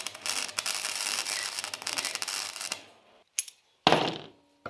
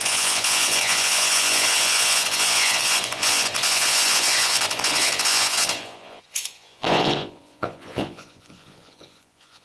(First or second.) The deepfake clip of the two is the second